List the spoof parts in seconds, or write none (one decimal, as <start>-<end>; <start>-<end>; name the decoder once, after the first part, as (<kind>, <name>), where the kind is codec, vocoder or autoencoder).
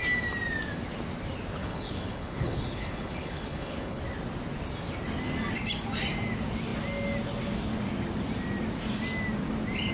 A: 1.6-4.0 (codec, HILCodec)